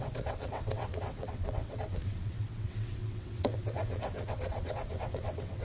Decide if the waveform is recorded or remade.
remade